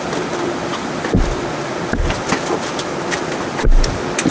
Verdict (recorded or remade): recorded